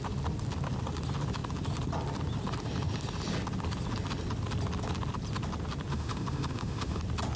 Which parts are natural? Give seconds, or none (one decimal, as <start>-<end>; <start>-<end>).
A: 0.0-5.9; 7.0-7.4